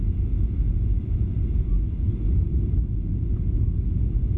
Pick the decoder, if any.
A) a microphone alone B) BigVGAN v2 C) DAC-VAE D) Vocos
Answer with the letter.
A